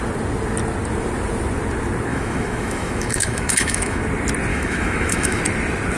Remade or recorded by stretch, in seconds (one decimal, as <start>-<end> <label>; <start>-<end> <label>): 0.0-2.1 recorded; 2.1-4.0 remade; 4.0-4.5 recorded; 4.5-5.4 remade; 5.4-6.0 recorded